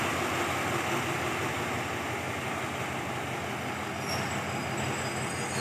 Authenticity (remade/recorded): recorded